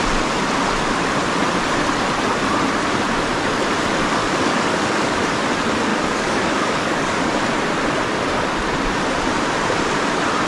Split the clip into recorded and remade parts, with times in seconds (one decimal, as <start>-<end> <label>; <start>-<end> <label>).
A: 0.0-4.2 recorded; 4.2-5.2 remade; 5.2-5.9 recorded; 5.9-7.3 remade; 7.3-10.5 recorded